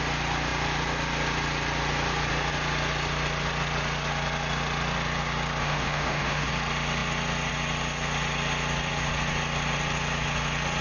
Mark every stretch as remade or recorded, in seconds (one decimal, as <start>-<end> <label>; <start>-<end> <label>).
0.0-5.6 recorded; 5.6-6.5 remade; 6.5-10.8 recorded